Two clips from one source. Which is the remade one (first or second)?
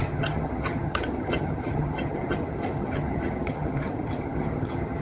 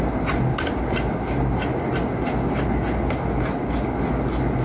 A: first